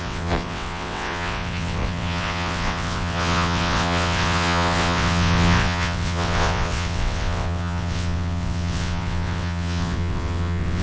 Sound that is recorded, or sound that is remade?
remade